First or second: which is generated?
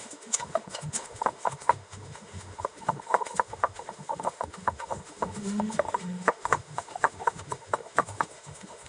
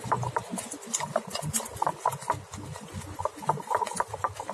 first